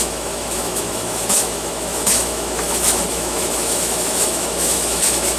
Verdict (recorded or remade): remade